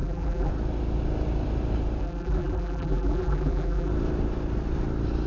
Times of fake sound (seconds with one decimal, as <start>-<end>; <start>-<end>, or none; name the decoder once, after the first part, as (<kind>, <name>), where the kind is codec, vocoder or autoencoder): 0.0-0.5 (vocoder, BigVGAN v2); 2.0-3.9